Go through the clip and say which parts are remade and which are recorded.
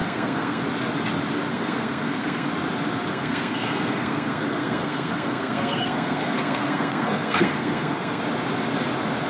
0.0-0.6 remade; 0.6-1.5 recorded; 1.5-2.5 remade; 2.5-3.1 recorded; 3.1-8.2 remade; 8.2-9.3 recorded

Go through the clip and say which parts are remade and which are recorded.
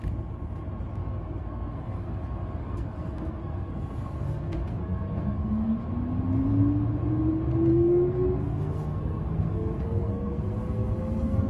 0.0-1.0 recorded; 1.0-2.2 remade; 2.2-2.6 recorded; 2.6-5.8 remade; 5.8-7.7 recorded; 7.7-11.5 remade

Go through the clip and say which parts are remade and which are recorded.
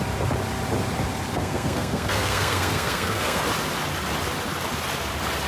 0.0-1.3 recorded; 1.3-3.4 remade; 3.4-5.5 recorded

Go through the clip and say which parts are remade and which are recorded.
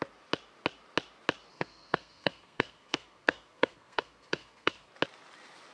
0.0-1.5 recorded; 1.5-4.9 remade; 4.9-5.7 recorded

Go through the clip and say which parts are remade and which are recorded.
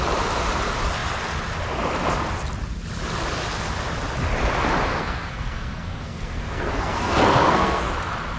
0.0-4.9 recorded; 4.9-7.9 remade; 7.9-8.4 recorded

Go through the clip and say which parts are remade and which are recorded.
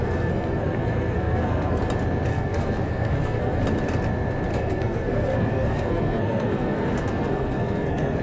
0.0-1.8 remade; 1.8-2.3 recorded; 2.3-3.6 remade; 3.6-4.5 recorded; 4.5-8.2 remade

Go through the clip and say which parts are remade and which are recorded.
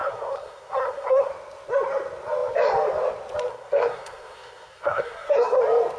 0.0-1.3 remade; 1.3-3.5 recorded; 3.5-5.6 remade; 5.6-6.0 recorded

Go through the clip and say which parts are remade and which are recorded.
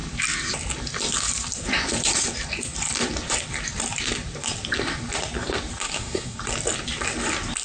0.0-5.8 recorded; 5.8-6.4 remade; 6.4-7.6 recorded